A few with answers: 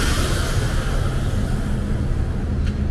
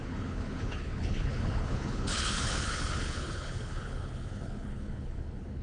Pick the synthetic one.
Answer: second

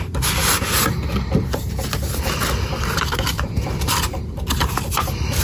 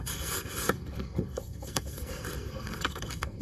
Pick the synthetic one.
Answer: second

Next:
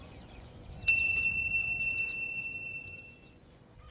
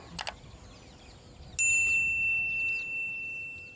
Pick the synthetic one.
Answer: first